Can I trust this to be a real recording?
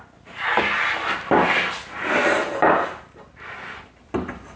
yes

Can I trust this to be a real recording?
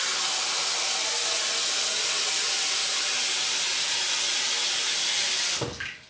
yes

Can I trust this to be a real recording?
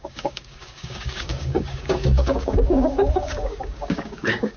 no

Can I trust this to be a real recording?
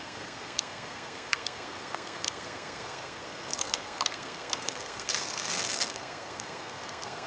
no